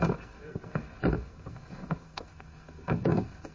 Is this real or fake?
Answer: fake